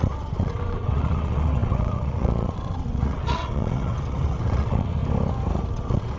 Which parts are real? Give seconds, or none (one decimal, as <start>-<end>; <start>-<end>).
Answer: 5.0-5.7